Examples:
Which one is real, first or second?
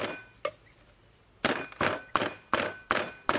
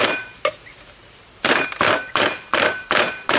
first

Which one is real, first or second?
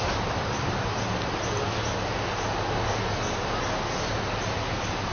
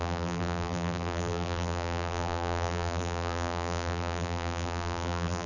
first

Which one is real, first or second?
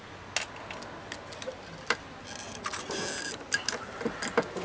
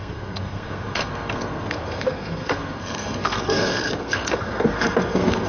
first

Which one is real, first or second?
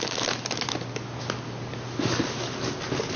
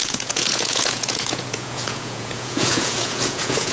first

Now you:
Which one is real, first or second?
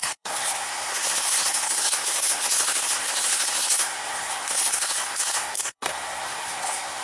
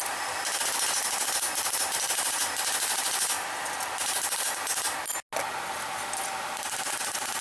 second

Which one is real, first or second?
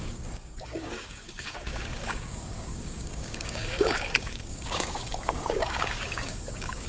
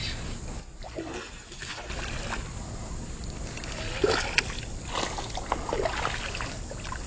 second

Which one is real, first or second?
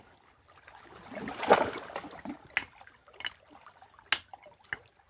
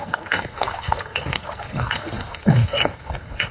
first